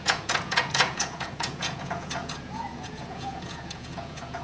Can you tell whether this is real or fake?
fake